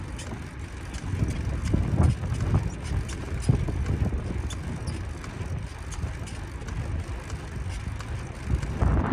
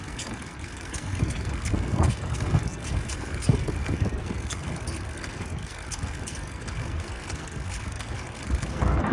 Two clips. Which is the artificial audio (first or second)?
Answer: second